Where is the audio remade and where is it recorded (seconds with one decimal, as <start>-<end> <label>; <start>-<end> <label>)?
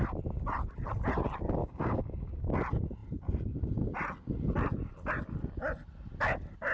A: 0.0-1.6 recorded; 1.6-2.5 remade; 2.5-6.7 recorded